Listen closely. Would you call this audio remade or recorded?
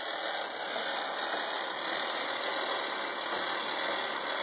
recorded